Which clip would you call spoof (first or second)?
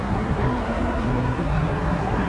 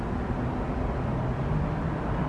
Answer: first